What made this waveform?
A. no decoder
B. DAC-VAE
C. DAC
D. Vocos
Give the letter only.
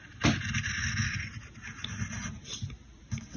A